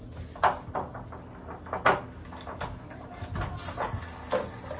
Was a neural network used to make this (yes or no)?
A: no